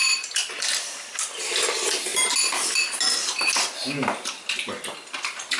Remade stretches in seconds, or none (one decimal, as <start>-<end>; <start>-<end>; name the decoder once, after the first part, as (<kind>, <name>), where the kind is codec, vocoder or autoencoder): 0.0-0.5 (vocoder, BigVGAN v2)